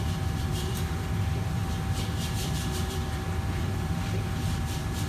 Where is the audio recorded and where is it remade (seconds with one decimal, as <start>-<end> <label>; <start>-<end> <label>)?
0.0-1.6 remade; 1.6-2.9 recorded; 2.9-5.1 remade